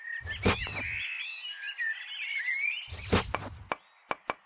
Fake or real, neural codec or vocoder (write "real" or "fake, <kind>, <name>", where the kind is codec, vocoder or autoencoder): real